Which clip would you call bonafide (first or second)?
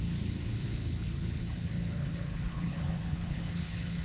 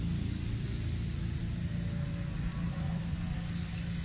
second